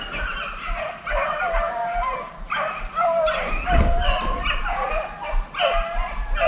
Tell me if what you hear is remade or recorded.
recorded